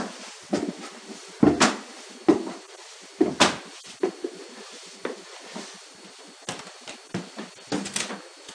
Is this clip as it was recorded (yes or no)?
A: yes